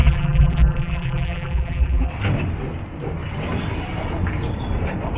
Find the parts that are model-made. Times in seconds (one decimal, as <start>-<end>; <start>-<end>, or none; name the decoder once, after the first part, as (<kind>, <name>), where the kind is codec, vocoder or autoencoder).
0.0-2.1 (vocoder, BigVGAN v2)